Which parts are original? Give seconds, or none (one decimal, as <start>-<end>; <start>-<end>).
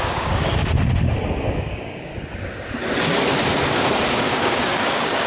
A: 0.6-1.4; 2.1-4.3